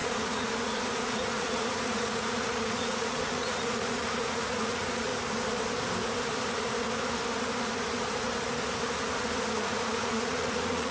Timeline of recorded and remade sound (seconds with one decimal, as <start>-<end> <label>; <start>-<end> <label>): 0.0-5.1 remade; 5.1-9.6 recorded; 9.6-10.9 remade